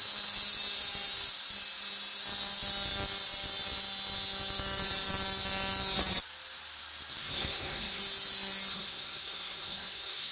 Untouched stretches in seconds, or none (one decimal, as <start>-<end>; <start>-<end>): 0.0-7.2; 8.0-8.7